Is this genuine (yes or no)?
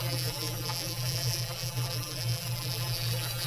no